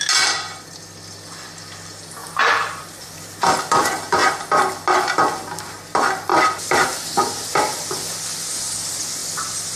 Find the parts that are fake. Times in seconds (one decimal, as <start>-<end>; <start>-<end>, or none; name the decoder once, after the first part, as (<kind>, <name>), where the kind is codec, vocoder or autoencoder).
2.2-3.6 (vocoder, BigVGAN v2)